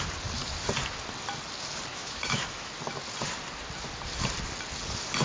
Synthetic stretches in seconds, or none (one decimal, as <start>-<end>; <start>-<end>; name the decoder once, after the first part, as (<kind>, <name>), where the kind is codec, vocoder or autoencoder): 1.9-2.7 (autoencoder, DAC-VAE)